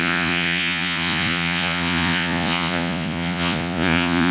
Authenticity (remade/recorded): remade